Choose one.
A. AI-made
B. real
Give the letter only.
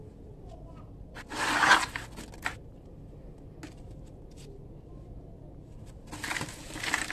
B